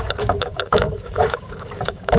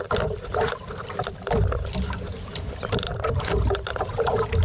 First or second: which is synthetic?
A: first